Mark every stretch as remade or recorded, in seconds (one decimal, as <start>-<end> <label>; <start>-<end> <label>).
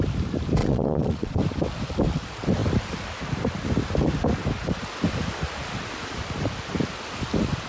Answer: 0.0-0.6 recorded; 0.6-1.4 remade; 1.4-7.7 recorded